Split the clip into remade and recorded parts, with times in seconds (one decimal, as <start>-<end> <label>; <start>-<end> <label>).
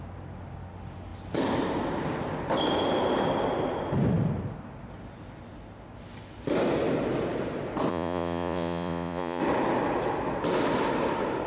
0.0-7.9 recorded; 7.9-9.4 remade; 9.4-11.5 recorded